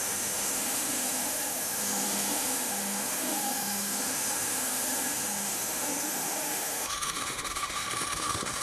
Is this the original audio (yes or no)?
no